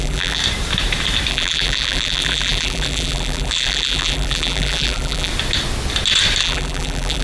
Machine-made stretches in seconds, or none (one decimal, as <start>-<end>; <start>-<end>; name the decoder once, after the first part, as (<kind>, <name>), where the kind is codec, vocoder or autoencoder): 0.0-0.4 (vocoder, BigVGAN v2); 1.3-5.3; 6.4-7.2